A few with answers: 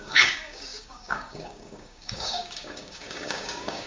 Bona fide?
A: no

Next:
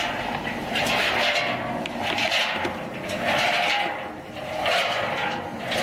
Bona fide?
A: yes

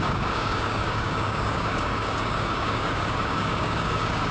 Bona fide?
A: no